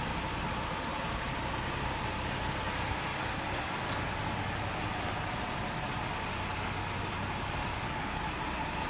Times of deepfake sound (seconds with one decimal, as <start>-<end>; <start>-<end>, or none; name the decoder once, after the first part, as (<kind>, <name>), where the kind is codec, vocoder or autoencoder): 3.1-3.7 (codec, DAC); 7.6-8.2